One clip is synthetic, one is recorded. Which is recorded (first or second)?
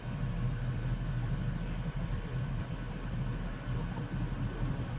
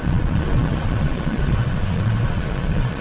first